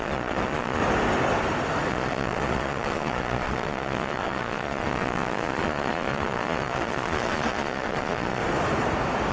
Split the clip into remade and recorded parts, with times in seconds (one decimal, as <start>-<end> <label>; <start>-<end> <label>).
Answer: 0.0-0.8 remade; 0.8-1.9 recorded; 1.9-8.4 remade; 8.4-9.3 recorded